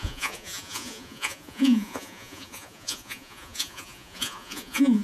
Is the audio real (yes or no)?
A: no